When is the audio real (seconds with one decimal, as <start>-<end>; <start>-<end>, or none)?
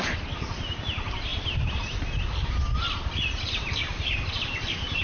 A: 0.0-5.0